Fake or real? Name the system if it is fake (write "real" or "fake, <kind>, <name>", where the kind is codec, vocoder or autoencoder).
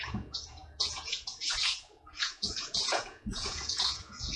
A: fake, vocoder, Vocos